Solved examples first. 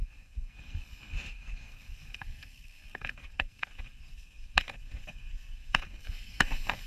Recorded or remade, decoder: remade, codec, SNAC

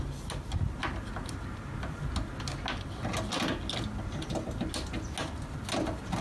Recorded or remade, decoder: recorded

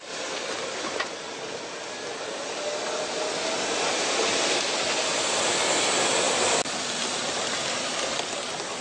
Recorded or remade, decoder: recorded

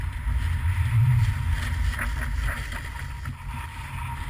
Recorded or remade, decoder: recorded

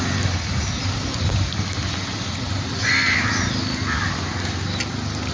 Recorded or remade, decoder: recorded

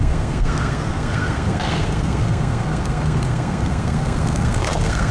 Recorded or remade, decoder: remade, codec, SNAC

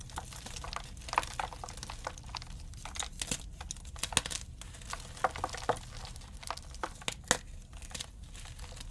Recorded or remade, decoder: recorded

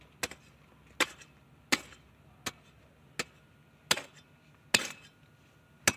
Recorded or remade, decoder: recorded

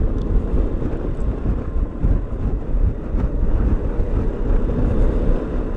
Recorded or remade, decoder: recorded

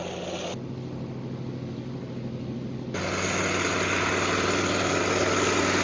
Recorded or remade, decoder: recorded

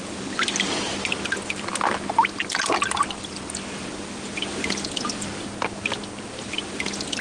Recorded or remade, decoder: recorded